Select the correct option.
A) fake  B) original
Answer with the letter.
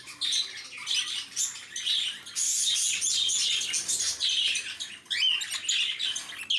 B